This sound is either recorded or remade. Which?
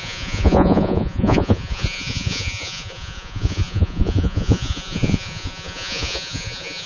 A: remade